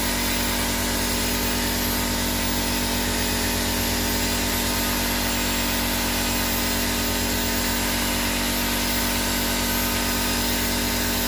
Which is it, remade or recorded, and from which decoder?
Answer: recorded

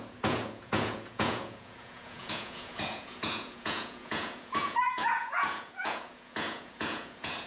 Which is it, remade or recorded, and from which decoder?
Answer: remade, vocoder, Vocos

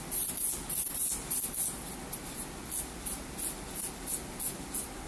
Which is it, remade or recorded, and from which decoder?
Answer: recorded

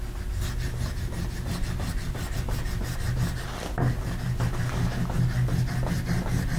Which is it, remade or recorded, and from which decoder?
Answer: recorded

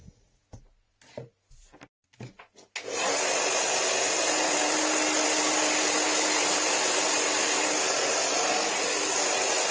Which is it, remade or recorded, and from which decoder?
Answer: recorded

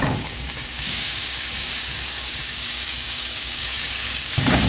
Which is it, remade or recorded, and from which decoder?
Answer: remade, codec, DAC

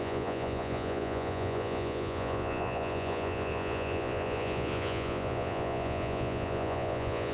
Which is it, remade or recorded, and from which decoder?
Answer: remade, vocoder, Vocos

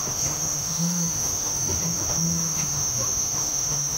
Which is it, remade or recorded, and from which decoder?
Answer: remade, autoencoder, DAC-VAE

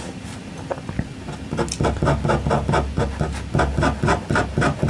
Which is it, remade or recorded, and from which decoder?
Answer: recorded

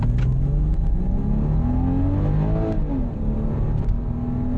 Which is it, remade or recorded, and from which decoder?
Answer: recorded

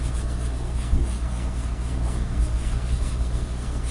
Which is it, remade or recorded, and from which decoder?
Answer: remade, codec, SNAC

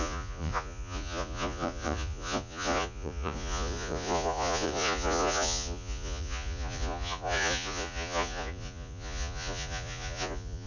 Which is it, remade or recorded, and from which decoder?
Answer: remade, vocoder, Vocos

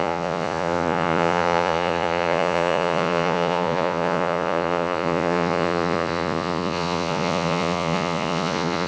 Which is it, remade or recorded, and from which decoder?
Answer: remade, vocoder, Vocos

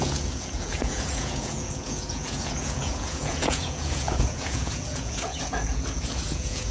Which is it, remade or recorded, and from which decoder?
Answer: remade, vocoder, Vocos